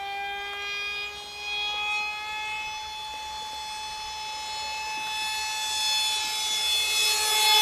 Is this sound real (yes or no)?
yes